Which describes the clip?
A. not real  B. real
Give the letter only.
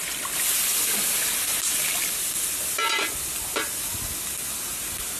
B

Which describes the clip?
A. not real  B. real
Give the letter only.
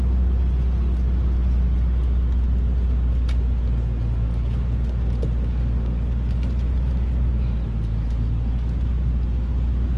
B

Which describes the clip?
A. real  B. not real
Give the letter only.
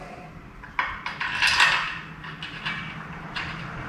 A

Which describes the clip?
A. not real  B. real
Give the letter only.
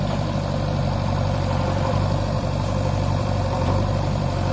A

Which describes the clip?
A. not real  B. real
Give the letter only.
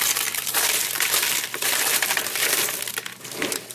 A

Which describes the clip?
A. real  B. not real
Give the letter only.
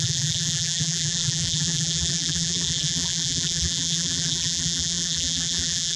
B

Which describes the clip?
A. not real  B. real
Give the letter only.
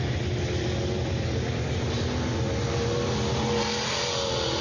B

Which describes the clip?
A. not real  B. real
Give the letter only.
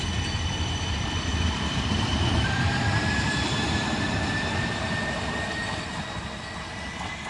A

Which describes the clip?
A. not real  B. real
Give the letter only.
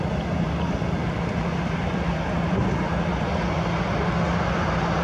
B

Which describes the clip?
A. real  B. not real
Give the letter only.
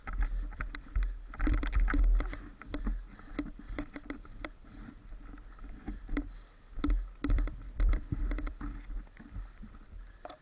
B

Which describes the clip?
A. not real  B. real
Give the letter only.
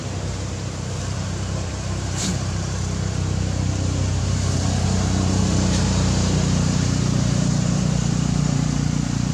A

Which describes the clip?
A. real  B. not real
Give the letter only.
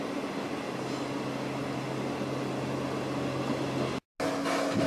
A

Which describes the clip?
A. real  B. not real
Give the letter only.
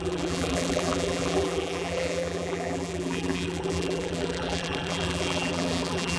B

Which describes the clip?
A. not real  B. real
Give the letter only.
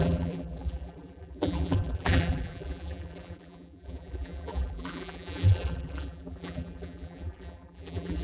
A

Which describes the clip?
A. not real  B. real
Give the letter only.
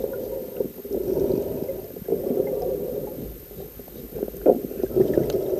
B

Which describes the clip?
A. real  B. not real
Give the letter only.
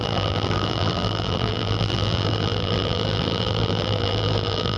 B